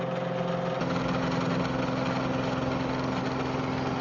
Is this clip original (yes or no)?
yes